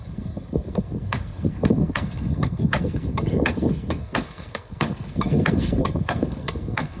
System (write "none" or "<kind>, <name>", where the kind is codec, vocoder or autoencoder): codec, SNAC